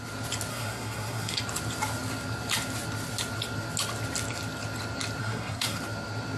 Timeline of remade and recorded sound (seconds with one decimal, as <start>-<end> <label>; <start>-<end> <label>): 0.0-0.5 recorded; 0.5-1.4 remade; 1.4-5.2 recorded; 5.2-5.8 remade; 5.8-6.4 recorded